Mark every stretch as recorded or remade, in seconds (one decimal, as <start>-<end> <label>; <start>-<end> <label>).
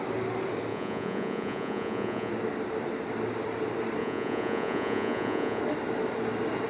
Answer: 0.0-0.7 recorded; 0.7-2.3 remade; 2.3-4.0 recorded; 4.0-5.6 remade; 5.6-6.7 recorded